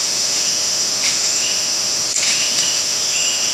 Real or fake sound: fake